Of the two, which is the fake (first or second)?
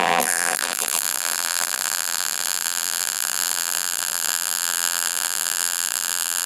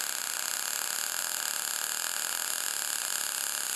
first